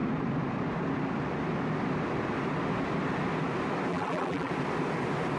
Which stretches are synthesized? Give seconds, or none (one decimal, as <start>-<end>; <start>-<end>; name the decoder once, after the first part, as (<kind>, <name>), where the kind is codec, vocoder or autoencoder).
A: 3.9-4.5 (vocoder, BigVGAN v2)